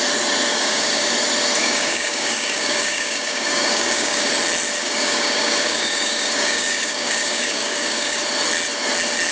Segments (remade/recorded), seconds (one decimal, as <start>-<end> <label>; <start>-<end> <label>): 0.0-0.5 recorded; 0.5-1.1 remade; 1.1-1.6 recorded; 1.6-4.3 remade; 4.3-4.8 recorded; 4.8-8.2 remade; 8.2-9.3 recorded

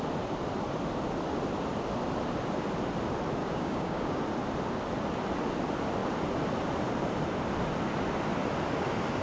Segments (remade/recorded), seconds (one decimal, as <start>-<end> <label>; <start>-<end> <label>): 0.0-3.4 recorded; 3.4-4.2 remade; 4.2-9.2 recorded

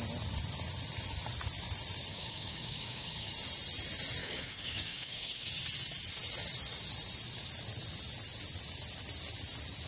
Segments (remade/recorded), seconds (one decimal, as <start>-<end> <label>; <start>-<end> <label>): 0.0-2.1 recorded; 2.1-3.3 remade; 3.3-4.2 recorded; 4.2-5.5 remade; 5.5-9.9 recorded

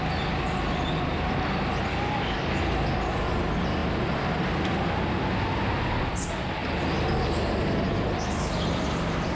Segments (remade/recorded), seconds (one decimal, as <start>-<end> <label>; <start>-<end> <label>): 0.0-1.9 recorded; 1.9-2.6 remade; 2.6-9.4 recorded

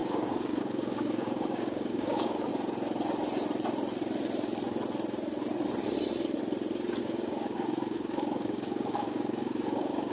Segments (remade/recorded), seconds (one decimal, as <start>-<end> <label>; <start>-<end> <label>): 0.0-2.5 remade; 2.5-7.0 recorded; 7.0-10.1 remade

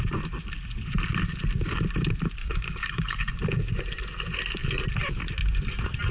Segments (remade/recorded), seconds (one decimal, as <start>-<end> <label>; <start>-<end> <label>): 0.0-2.4 recorded; 2.4-3.3 remade; 3.3-6.1 recorded